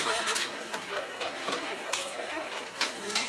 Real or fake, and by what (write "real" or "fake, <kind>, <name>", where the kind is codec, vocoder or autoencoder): fake, codec, SNAC